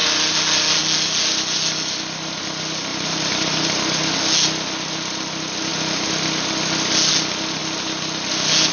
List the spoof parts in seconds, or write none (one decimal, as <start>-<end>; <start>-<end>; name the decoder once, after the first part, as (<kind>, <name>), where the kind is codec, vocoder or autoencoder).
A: 2.9-4.0 (vocoder, BigVGAN v2)